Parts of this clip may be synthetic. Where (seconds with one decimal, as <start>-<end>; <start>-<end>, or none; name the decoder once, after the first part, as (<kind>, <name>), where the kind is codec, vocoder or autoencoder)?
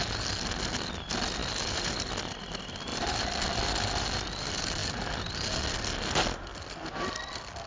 1.4-1.9 (vocoder, BigVGAN v2); 2.9-3.6